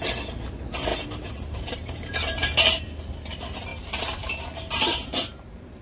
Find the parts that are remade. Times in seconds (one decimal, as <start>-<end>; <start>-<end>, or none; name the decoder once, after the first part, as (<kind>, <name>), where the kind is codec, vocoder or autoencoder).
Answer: 0.9-2.4 (vocoder, BigVGAN v2); 3.7-5.8